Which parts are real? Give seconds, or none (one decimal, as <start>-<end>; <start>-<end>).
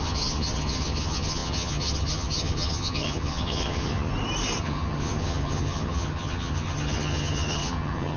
4.1-4.6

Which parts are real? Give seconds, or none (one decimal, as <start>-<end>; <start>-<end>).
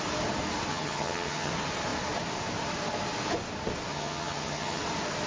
0.0-0.7; 1.5-3.9; 4.8-5.3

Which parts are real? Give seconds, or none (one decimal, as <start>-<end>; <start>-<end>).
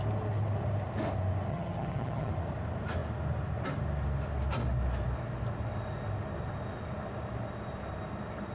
0.0-1.5; 2.3-8.5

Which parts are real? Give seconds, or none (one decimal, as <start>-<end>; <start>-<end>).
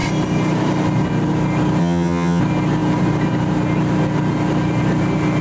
0.0-1.8; 2.4-5.4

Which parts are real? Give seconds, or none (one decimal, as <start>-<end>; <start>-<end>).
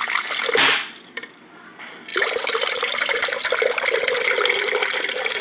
0.0-5.4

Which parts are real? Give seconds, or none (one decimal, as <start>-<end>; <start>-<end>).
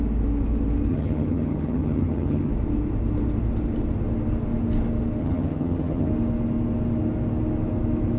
0.0-0.9; 2.5-5.2; 6.1-8.2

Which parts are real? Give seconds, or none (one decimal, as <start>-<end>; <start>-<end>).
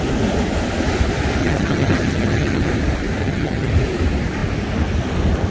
0.0-1.4; 2.7-3.2; 3.7-5.5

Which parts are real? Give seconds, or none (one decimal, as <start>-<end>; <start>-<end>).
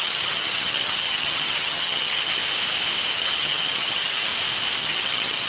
2.4-3.1; 4.3-4.8